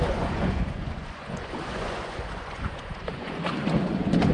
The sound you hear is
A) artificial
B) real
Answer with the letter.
A